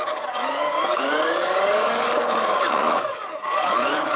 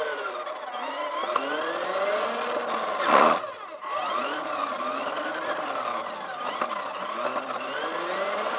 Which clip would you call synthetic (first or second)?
first